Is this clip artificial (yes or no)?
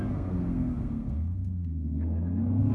yes